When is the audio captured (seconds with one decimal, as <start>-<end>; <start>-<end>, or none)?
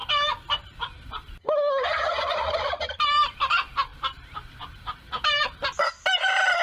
0.0-3.9; 5.0-6.6